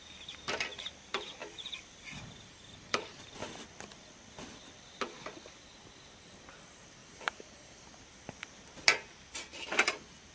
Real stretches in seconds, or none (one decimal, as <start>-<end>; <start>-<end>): 0.0-1.4; 3.2-7.0; 8.1-10.3